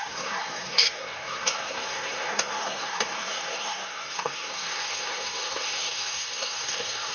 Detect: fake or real fake